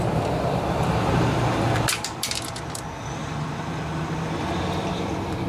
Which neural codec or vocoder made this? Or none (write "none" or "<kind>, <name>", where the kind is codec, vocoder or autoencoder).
vocoder, BigVGAN v2